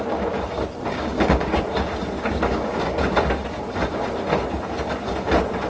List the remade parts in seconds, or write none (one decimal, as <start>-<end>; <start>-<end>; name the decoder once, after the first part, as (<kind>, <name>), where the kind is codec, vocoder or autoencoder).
0.9-1.6 (codec, DAC); 2.3-3.2